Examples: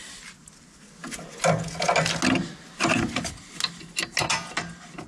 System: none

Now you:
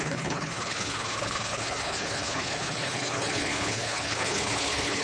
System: codec, HILCodec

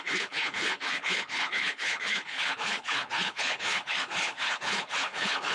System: codec, HILCodec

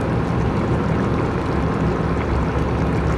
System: none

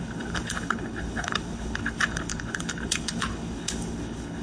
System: codec, HILCodec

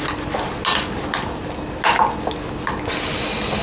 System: none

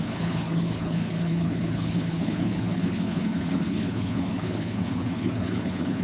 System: codec, HILCodec